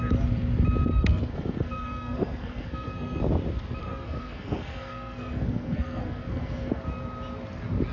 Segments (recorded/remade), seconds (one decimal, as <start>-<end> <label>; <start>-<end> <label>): 0.0-0.9 recorded; 0.9-3.2 remade; 3.2-3.8 recorded; 3.8-6.8 remade; 6.8-7.9 recorded